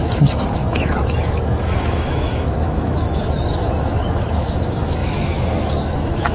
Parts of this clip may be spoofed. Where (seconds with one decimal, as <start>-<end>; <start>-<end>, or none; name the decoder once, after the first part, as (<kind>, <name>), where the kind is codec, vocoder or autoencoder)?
0.0-6.3 (autoencoder, DAC-VAE)